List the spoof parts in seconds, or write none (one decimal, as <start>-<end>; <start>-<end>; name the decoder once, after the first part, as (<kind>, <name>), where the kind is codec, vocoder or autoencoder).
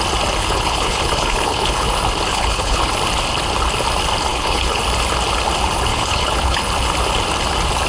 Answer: 0.4-1.9 (codec, HILCodec); 2.3-2.9; 4.3-4.8; 5.9-6.7